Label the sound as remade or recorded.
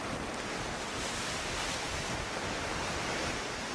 recorded